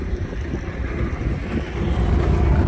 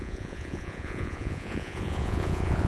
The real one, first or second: first